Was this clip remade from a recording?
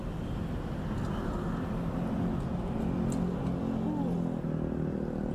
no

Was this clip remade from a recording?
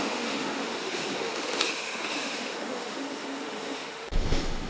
yes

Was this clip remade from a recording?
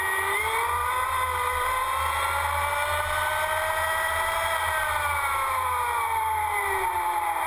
no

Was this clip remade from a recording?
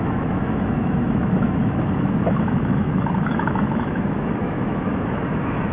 yes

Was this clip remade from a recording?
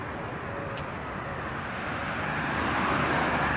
no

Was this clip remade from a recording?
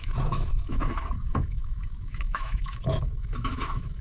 yes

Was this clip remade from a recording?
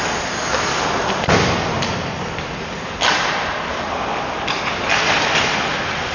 no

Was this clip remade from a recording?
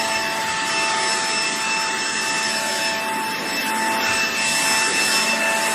no